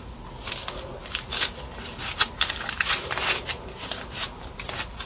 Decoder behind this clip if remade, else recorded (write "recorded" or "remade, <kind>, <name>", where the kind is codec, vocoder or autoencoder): recorded